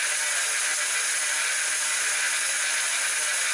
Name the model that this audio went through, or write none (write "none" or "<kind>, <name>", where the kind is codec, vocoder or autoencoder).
none